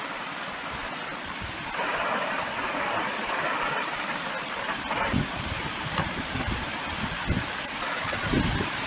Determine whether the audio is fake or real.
fake